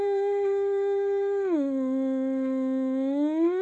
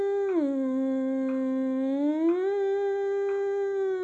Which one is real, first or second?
second